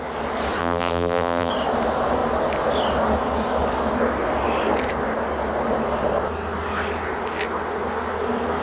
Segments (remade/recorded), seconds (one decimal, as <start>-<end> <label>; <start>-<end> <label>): 0.0-0.6 recorded; 0.6-1.5 remade; 1.5-8.6 recorded